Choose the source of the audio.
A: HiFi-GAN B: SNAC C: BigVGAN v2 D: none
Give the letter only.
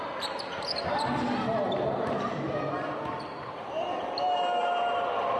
D